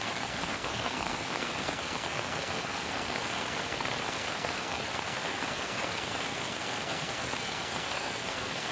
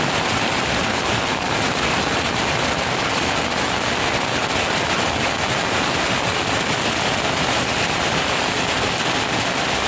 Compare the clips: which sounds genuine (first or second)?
second